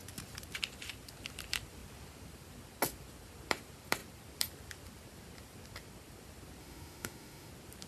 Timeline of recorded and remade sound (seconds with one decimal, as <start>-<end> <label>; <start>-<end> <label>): 0.0-6.6 recorded; 6.6-7.5 remade; 7.5-7.9 recorded